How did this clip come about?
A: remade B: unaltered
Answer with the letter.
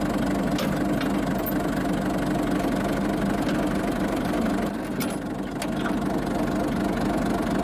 B